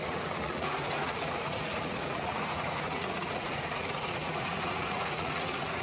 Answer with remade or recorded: remade